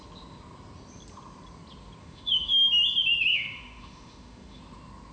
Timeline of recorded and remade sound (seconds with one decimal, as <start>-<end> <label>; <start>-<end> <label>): 0.0-2.0 recorded; 2.0-2.7 remade; 2.7-3.3 recorded; 3.3-4.6 remade; 4.6-5.1 recorded